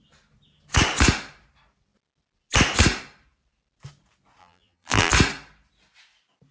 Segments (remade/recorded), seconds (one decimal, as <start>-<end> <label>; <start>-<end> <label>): 0.0-4.4 recorded; 4.4-5.1 remade; 5.1-6.5 recorded